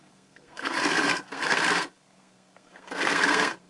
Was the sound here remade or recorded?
remade